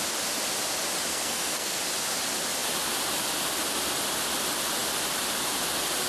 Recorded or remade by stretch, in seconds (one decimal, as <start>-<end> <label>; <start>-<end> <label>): 0.0-1.1 recorded; 1.1-1.8 remade; 1.8-6.1 recorded